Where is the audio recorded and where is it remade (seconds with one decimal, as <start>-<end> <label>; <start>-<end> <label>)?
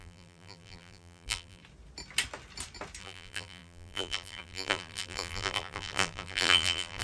0.0-1.6 remade; 1.6-3.0 recorded; 3.0-7.0 remade